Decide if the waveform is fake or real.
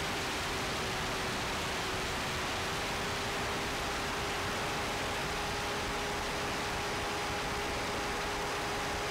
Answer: real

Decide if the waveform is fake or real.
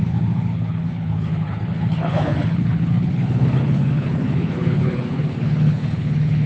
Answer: fake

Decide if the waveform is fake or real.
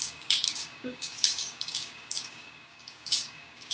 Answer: fake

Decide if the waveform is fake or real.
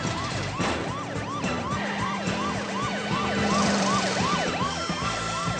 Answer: fake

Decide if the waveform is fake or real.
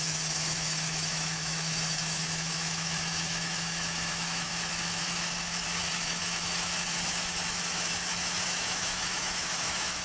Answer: fake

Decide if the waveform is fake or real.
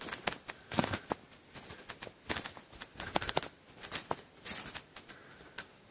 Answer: real